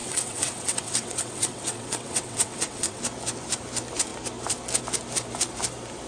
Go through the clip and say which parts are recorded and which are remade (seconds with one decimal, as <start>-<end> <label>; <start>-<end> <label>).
0.0-3.0 remade; 3.0-6.1 recorded